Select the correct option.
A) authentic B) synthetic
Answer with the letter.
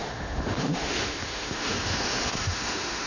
B